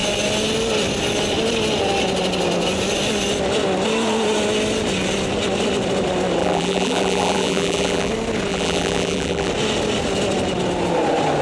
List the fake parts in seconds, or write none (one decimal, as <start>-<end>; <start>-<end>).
6.4-8.1; 8.5-9.5